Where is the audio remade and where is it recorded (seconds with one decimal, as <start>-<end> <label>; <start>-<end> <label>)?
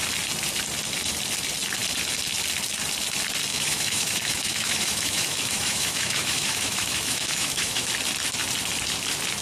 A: 0.0-3.5 recorded; 3.5-7.9 remade; 7.9-9.4 recorded